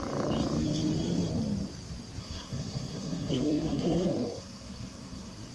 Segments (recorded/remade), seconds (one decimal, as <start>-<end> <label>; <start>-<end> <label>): 0.0-2.2 recorded; 2.2-5.5 remade